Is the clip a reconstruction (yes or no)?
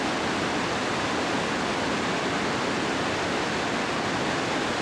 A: no